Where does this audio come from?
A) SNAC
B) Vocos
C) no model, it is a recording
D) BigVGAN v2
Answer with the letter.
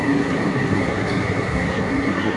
A